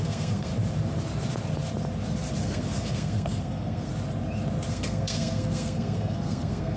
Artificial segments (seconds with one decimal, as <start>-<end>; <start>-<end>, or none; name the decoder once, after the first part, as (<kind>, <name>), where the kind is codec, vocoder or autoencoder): 0.0-0.5 (codec, SNAC); 2.4-3.9; 4.7-6.8